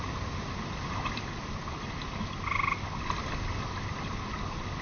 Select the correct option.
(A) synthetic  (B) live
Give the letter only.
B